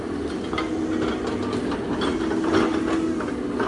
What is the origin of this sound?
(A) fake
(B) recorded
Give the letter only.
B